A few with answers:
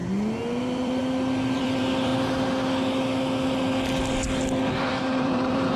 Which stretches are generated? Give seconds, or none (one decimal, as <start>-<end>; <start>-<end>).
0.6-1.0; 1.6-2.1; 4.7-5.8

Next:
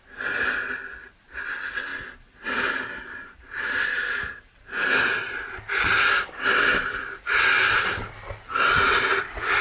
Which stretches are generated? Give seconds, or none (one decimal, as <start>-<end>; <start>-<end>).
1.9-6.2

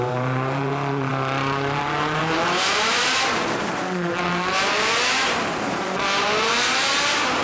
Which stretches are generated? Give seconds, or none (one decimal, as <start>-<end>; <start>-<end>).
0.0-7.4

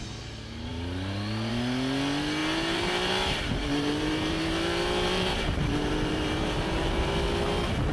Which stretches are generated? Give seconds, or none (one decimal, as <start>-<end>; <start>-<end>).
2.4-7.1

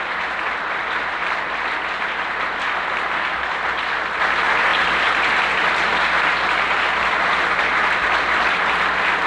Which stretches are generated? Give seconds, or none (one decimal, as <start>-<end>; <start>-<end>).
none

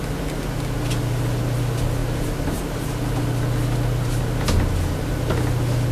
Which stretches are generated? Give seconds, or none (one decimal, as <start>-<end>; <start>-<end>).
none

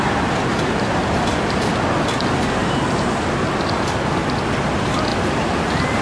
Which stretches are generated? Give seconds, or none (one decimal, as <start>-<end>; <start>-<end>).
0.5-1.7; 2.6-3.1; 5.1-6.0